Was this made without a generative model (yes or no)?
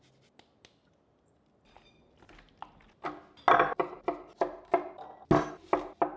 yes